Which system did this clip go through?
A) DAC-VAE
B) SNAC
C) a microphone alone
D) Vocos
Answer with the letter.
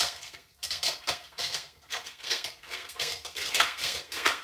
B